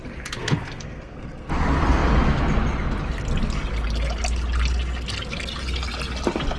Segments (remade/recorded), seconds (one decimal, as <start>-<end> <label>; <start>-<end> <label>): 0.0-0.4 recorded; 0.4-1.5 remade; 1.5-6.6 recorded